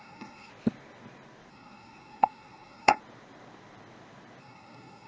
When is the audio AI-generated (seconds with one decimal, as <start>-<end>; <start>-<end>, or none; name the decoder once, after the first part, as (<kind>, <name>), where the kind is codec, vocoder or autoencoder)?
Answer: 0.0-0.5 (codec, SNAC); 1.5-3.0; 4.4-5.1